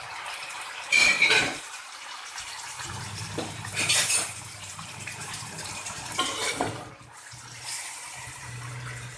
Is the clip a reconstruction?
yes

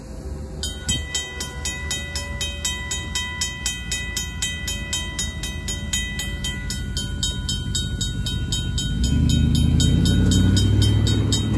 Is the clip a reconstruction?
no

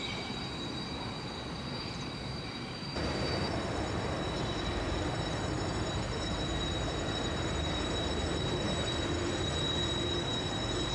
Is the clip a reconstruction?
yes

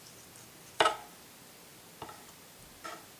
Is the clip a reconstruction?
no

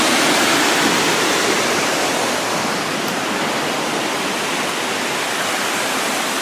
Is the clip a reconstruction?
no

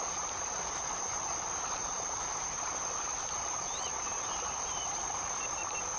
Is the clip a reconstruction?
yes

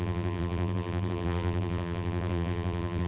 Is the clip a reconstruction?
yes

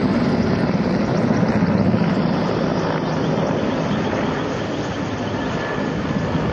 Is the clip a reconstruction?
no